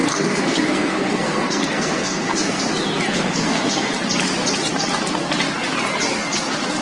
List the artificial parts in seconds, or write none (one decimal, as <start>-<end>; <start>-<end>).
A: 0.0-2.6; 3.1-3.9